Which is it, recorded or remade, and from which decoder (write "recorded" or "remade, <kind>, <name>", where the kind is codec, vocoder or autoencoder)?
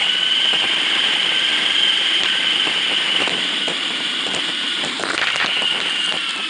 remade, vocoder, BigVGAN v2